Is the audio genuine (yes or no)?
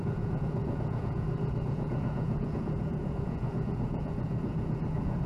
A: no